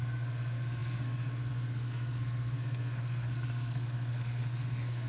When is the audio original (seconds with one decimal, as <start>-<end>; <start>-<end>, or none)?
none